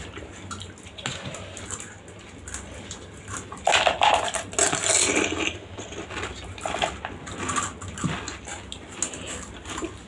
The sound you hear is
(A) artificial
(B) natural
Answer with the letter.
B